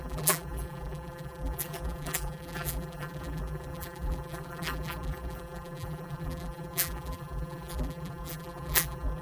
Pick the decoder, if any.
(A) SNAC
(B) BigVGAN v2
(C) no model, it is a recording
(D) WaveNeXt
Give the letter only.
B